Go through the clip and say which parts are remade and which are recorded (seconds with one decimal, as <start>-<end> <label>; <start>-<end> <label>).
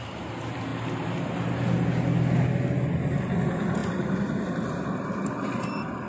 0.0-6.1 recorded